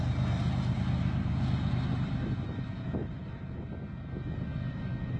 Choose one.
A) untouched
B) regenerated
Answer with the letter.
A